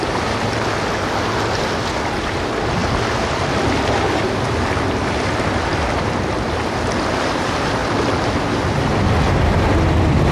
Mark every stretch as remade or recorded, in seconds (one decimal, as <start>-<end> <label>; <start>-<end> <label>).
0.0-10.3 recorded